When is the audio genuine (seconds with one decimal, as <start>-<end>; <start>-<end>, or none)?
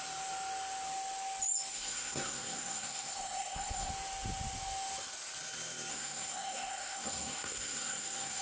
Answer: 0.0-1.7; 3.9-5.9